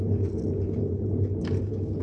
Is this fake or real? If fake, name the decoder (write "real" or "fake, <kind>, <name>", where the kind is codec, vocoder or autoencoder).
real